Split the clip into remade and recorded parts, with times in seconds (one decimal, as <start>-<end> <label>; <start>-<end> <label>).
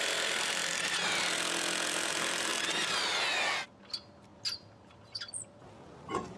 0.0-0.6 remade; 0.6-1.9 recorded; 1.9-2.5 remade; 2.5-3.8 recorded; 3.8-6.4 remade